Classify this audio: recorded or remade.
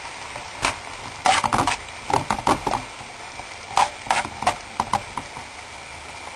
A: recorded